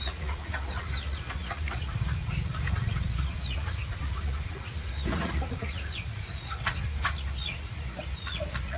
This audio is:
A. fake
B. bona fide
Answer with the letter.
A